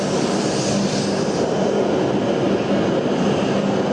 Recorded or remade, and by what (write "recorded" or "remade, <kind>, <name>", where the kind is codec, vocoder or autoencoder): recorded